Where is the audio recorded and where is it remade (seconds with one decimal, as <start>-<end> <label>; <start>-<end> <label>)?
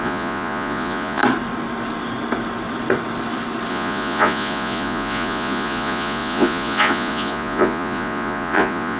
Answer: 0.0-1.2 remade; 1.2-3.7 recorded; 3.7-9.0 remade